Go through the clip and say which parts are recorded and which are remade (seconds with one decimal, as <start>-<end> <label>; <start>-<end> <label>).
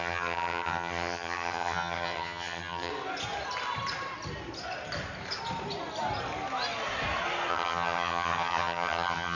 0.0-2.9 remade; 2.9-7.5 recorded; 7.5-9.3 remade